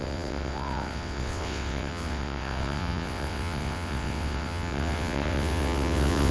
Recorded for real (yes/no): no